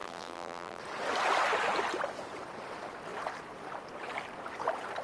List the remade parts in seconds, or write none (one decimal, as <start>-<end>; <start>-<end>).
0.0-0.8